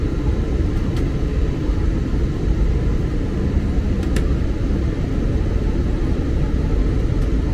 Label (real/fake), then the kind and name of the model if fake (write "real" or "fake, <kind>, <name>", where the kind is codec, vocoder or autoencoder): real